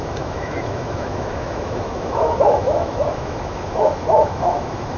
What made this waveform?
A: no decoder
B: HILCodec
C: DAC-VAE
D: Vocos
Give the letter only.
C